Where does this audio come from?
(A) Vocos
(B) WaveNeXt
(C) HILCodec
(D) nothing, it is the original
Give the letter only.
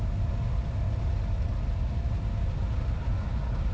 D